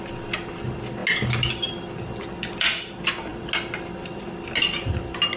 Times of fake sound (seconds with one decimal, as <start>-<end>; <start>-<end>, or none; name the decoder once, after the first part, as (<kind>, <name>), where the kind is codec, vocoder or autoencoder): none